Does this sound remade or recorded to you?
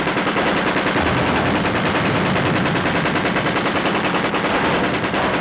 recorded